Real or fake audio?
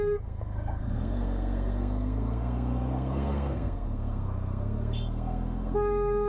fake